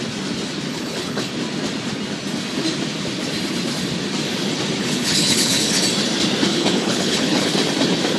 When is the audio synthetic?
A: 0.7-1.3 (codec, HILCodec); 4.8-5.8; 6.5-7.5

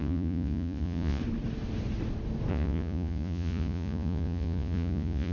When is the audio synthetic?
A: 0.0-1.2 (vocoder, Vocos); 2.5-5.3

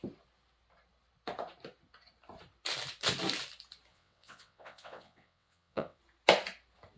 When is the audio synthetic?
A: 3.9-6.0 (vocoder, WaveNeXt)